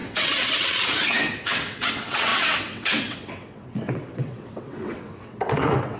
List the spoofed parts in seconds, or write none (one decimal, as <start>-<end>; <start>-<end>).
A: 0.0-6.0